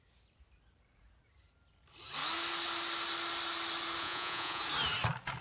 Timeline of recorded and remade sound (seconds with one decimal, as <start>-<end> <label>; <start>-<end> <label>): 0.0-4.0 recorded; 4.0-4.6 remade; 4.6-5.4 recorded